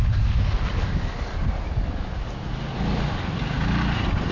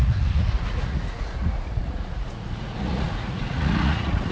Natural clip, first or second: first